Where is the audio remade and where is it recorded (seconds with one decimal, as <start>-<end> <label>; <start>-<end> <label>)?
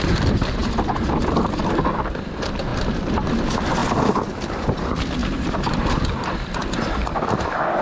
0.0-3.8 remade; 3.8-4.4 recorded; 4.4-5.2 remade; 5.2-6.3 recorded; 6.3-7.8 remade